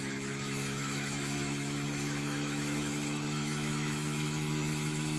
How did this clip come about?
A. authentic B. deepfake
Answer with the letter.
B